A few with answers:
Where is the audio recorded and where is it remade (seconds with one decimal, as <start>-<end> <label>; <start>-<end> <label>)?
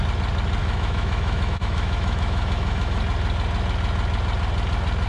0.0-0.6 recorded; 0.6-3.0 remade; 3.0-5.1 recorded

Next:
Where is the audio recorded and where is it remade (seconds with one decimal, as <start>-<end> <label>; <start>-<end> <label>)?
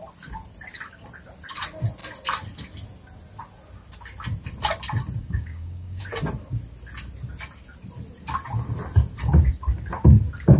0.0-5.2 recorded; 5.2-6.0 remade; 6.0-10.6 recorded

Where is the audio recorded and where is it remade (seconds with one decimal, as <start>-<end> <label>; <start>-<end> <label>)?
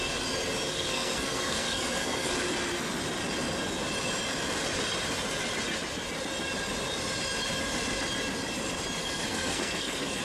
0.0-0.7 recorded; 0.7-2.3 remade; 2.3-9.0 recorded; 9.0-10.2 remade